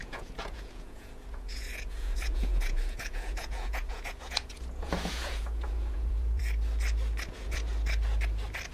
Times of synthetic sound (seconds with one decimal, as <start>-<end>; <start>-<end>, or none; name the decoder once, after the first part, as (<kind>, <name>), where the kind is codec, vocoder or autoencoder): 0.0-6.4 (vocoder, Vocos); 7.3-7.7

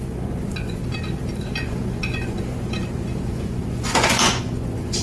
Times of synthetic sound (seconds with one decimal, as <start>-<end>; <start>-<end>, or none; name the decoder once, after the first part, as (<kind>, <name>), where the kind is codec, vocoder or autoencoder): 0.0-0.8 (vocoder, Vocos); 1.6-5.0

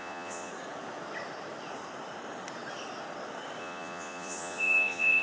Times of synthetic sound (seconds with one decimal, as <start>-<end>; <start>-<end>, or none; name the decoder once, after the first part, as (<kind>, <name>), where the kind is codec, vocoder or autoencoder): 0.0-0.5 (vocoder, Vocos); 3.6-5.2

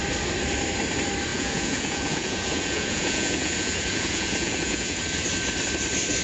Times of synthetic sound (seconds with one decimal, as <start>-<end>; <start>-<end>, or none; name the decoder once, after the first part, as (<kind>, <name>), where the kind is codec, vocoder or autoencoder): 1.3-5.0 (vocoder, Vocos)

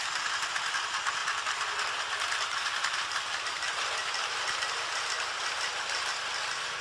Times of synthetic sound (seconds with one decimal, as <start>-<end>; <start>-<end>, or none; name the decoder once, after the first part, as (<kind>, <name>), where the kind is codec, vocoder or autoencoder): none

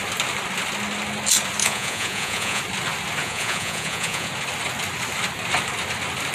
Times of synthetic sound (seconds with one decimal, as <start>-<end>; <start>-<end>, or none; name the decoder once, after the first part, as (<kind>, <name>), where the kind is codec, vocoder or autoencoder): 1.6-2.6 (vocoder, Vocos); 3.2-4.3

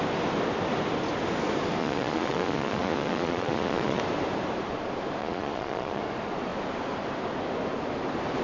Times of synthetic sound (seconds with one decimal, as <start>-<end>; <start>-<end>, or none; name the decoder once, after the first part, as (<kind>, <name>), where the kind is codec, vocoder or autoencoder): 1.8-4.0 (vocoder, Vocos); 5.2-6.0